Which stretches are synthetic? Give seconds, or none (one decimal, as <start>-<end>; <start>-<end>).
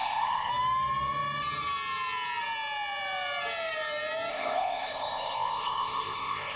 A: 0.0-0.5; 4.3-6.6